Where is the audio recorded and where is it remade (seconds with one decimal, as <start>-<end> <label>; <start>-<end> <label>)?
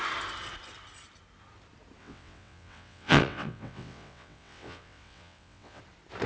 0.0-2.0 recorded; 2.0-5.8 remade; 5.8-6.3 recorded